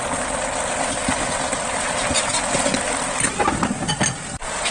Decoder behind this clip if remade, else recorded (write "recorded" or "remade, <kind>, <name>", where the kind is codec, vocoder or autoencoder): recorded